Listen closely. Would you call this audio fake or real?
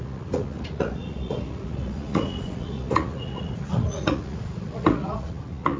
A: fake